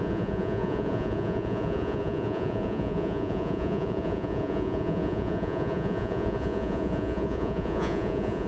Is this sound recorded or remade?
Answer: remade